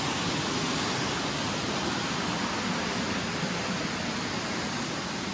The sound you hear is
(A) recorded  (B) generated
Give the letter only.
A